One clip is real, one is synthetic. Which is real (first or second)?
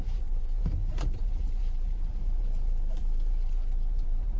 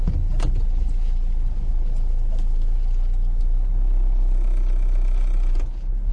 second